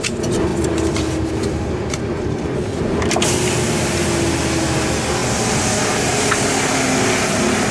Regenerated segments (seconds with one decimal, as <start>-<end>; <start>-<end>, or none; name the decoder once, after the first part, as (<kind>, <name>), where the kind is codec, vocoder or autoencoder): 0.5-2.8 (vocoder, BigVGAN v2)